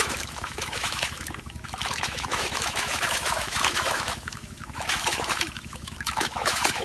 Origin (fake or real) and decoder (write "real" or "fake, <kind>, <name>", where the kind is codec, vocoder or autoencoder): fake, autoencoder, DAC-VAE